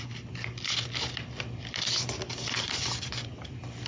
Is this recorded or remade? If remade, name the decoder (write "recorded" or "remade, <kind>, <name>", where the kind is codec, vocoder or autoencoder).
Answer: recorded